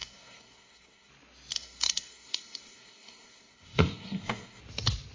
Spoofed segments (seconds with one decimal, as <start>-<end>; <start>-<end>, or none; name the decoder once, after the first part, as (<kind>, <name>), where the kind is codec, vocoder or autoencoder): 0.0-1.1 (codec, SNAC); 1.5-4.6